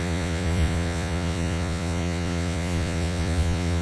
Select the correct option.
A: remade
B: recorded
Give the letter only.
A